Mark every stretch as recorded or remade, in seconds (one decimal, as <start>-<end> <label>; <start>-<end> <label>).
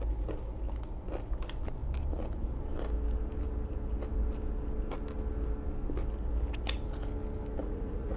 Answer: 0.0-7.6 recorded; 7.6-8.2 remade